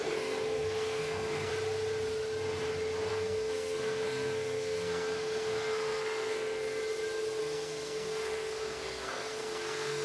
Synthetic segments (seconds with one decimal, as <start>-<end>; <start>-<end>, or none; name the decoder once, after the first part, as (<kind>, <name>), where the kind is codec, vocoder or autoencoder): 0.0-1.5 (codec, SNAC); 3.1-6.8; 7.4-10.0